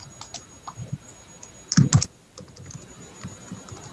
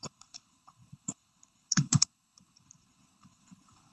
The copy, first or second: second